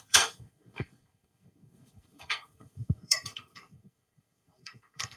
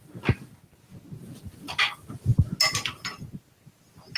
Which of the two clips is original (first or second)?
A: second